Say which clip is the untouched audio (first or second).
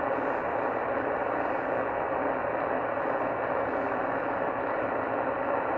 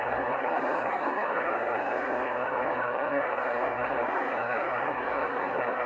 first